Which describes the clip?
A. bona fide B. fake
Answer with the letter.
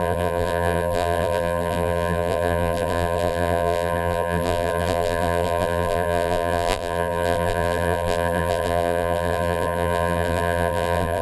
B